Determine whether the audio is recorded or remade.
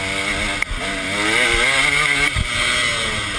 recorded